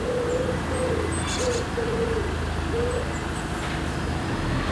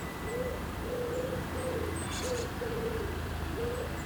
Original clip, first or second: first